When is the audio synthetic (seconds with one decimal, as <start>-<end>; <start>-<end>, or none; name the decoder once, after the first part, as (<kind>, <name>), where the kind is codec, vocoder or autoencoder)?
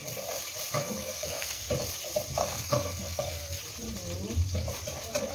0.8-1.7 (codec, SNAC); 2.4-3.6